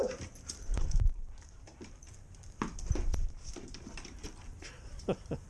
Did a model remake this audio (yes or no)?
yes